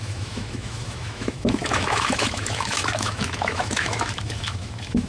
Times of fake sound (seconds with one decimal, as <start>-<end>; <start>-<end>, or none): 0.0-5.1